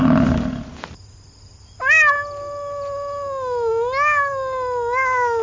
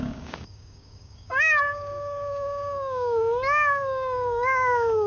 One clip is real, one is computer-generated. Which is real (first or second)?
first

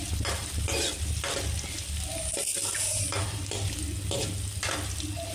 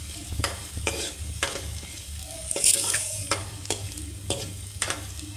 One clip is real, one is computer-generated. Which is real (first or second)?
first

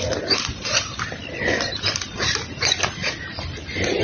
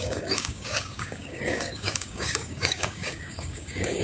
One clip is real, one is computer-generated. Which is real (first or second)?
first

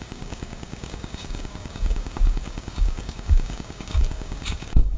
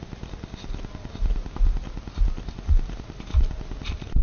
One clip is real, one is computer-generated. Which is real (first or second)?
second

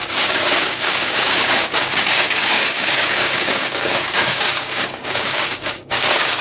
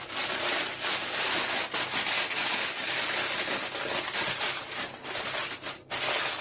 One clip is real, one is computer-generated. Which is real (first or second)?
second